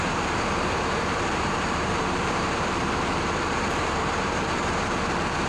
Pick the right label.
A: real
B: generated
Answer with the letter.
B